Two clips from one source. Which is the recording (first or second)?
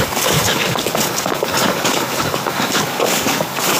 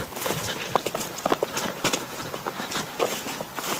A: second